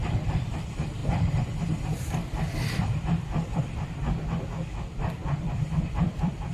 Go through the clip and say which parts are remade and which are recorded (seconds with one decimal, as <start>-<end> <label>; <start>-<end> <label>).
0.0-6.5 remade